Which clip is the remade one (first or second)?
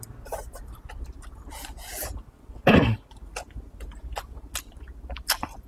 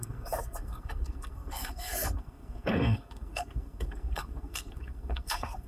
second